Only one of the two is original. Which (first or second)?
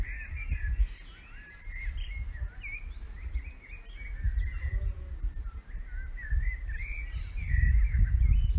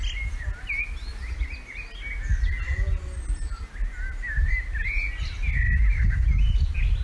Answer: second